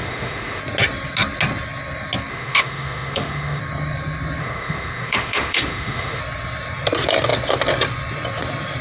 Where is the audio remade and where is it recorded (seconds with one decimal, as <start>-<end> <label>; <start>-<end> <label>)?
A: 0.0-0.6 remade; 0.6-2.3 recorded; 2.3-3.6 remade; 3.6-4.4 recorded; 4.4-6.2 remade; 6.2-8.8 recorded